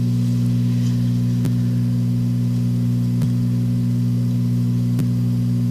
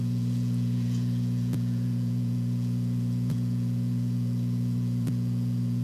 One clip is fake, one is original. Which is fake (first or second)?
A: second